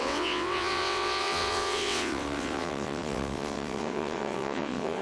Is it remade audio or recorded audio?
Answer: remade